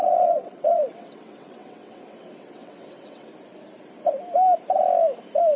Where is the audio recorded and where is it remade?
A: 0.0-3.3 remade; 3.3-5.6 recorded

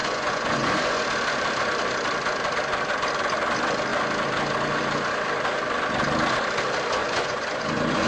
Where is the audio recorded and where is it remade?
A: 0.0-1.0 remade; 1.0-7.0 recorded; 7.0-8.1 remade

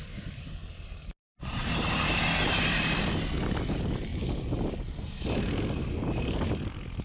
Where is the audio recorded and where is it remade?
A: 0.0-1.2 recorded; 1.2-3.0 remade; 3.0-7.0 recorded